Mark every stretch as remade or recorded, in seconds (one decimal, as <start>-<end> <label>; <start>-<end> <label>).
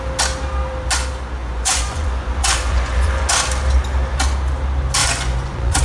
0.0-1.4 recorded; 1.4-3.3 remade; 3.3-5.0 recorded; 5.0-5.8 remade